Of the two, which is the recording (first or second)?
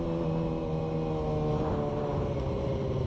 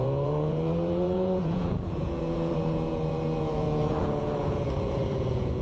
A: first